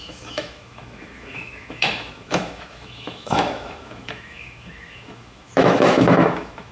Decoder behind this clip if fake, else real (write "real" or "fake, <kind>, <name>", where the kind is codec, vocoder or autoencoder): fake, autoencoder, DAC-VAE